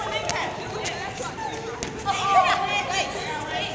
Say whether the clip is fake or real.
real